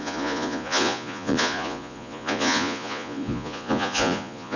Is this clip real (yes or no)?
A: no